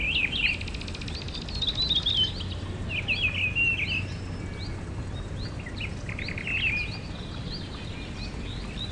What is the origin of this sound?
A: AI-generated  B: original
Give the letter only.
B